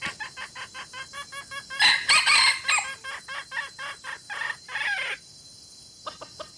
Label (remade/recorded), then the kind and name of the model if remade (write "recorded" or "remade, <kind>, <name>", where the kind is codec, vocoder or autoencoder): recorded